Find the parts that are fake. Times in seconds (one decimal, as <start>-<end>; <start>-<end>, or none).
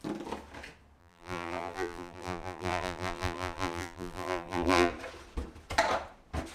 1.0-4.9